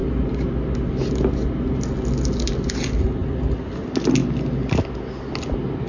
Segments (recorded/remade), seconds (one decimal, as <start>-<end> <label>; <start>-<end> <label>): 0.0-5.9 recorded